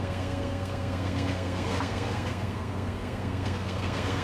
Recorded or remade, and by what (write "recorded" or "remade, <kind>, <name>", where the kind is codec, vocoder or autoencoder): remade, codec, SNAC